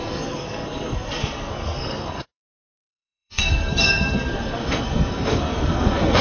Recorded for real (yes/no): no